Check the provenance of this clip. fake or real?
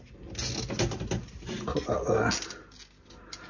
real